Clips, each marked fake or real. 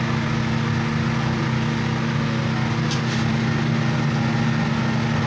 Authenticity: real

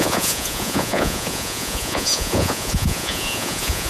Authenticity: fake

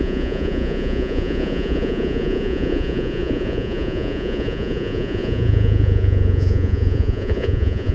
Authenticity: fake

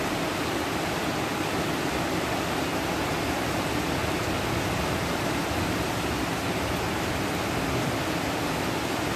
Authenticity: real